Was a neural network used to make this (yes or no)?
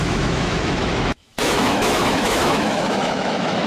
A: yes